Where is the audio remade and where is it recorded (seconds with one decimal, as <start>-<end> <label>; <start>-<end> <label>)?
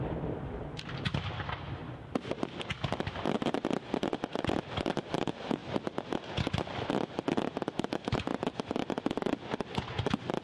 0.0-8.3 recorded; 8.3-9.5 remade; 9.5-10.4 recorded